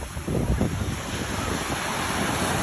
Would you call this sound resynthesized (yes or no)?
no